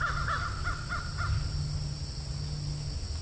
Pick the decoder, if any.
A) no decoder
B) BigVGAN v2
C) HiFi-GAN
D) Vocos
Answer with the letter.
A